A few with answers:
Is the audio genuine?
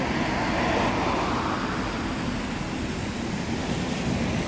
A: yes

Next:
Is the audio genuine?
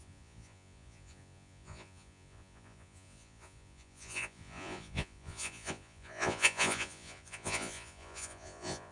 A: no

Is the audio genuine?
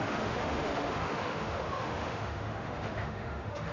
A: no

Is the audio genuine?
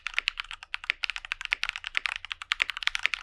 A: yes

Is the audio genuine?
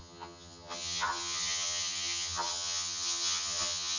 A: no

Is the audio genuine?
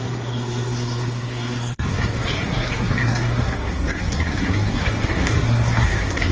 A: no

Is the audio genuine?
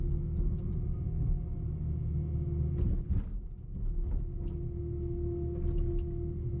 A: yes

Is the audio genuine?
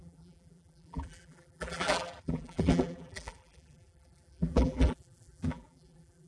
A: no